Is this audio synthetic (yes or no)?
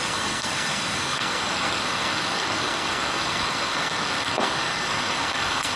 yes